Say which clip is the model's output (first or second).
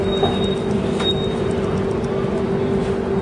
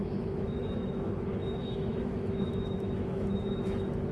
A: second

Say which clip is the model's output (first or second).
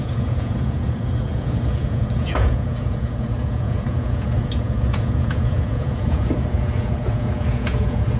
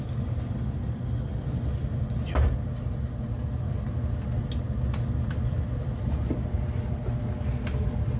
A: first